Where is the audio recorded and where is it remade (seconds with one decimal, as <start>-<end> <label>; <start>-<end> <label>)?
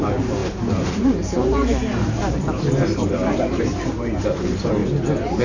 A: 0.0-4.8 remade; 4.8-5.4 recorded